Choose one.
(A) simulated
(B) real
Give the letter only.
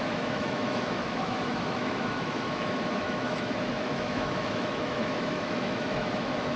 A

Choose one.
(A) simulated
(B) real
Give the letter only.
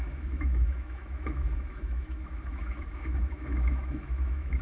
A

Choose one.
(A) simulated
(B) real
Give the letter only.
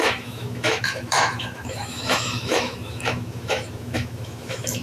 A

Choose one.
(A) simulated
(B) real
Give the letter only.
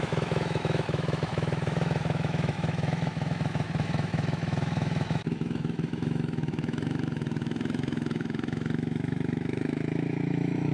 A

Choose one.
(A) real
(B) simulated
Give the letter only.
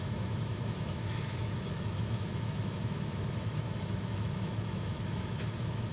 B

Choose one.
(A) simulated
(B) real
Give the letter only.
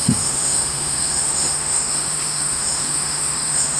A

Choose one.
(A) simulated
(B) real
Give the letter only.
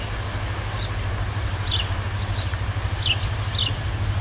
B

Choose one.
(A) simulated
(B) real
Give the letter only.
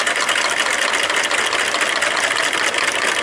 B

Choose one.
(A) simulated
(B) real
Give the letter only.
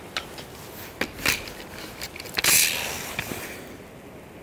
B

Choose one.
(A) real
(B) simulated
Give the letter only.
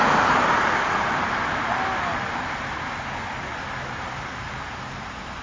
A